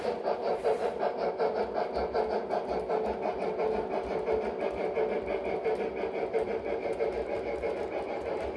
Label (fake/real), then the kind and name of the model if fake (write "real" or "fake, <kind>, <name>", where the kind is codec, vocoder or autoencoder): real